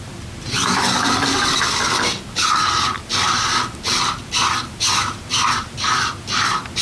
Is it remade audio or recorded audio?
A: recorded